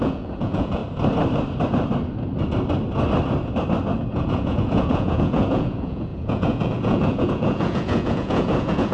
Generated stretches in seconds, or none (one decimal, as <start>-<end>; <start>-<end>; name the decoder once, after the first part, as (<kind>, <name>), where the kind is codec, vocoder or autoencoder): 0.0-0.8 (vocoder, Vocos); 4.1-8.9